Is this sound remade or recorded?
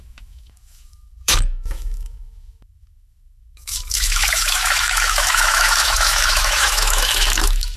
remade